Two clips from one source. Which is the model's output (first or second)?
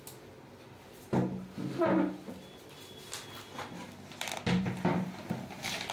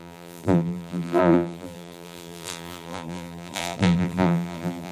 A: second